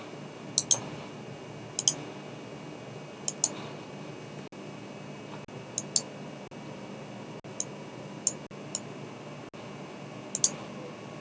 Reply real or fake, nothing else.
real